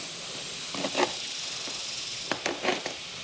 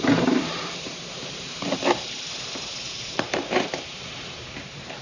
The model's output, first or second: second